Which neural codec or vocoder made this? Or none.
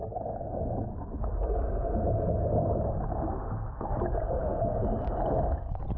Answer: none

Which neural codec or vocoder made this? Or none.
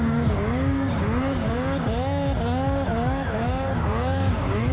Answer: codec, DAC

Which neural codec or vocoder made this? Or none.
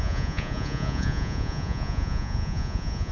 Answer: vocoder, Vocos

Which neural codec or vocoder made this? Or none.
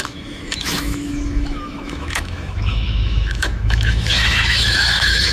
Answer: autoencoder, DAC-VAE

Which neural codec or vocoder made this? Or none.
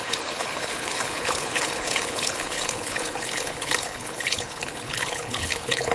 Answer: codec, HILCodec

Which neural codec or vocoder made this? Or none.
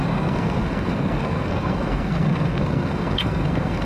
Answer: codec, SNAC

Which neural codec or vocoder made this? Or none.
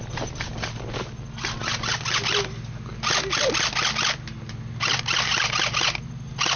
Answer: none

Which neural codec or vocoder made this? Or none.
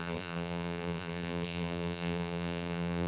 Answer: vocoder, BigVGAN v2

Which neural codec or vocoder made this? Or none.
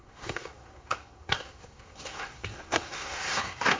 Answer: codec, SNAC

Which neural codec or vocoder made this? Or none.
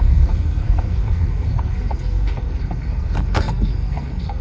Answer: codec, SNAC